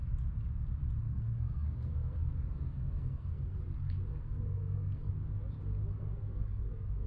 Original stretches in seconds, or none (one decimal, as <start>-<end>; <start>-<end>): 0.0-1.0; 3.6-4.1; 5.1-5.9